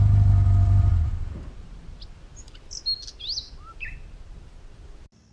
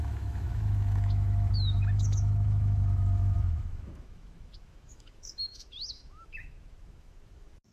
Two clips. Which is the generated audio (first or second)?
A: second